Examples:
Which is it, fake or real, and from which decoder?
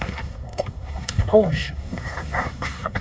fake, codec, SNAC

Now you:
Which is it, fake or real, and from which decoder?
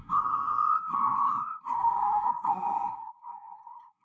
fake, codec, SNAC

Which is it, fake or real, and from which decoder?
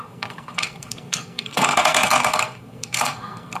fake, codec, SNAC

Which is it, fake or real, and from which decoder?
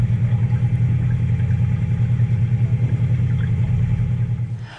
real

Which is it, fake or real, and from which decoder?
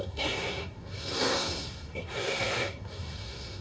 fake, codec, SNAC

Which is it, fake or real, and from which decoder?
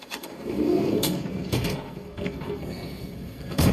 fake, codec, SNAC